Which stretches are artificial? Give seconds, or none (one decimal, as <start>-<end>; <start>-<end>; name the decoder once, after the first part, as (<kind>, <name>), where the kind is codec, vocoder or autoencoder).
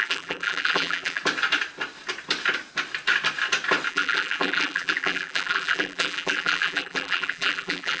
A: 0.0-1.2 (vocoder, BigVGAN v2); 3.9-8.0